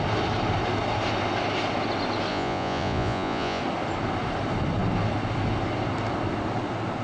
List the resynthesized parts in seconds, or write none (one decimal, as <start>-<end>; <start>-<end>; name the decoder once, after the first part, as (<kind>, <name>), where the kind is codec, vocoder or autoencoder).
2.3-3.6 (vocoder, Vocos)